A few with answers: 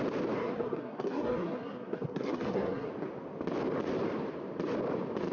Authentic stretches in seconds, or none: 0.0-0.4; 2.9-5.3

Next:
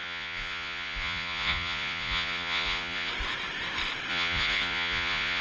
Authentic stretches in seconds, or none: 3.1-4.1

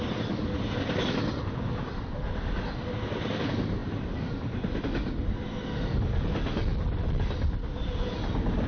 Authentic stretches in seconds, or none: 0.0-8.7

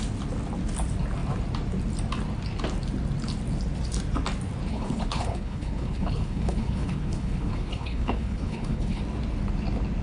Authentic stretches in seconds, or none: 0.0-4.7; 9.0-10.0

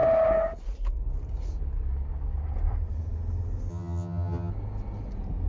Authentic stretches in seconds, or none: 0.0-3.7; 4.5-5.5

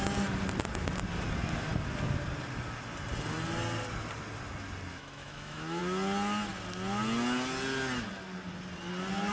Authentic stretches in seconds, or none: 0.0-4.9; 5.8-9.3

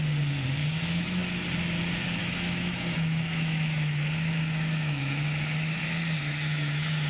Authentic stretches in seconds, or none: 0.0-0.6; 1.2-2.2; 5.8-6.2